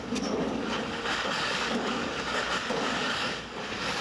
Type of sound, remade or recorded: remade